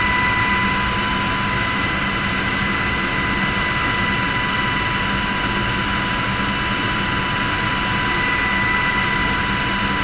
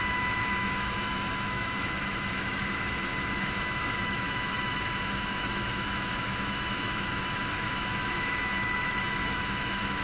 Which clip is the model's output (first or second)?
second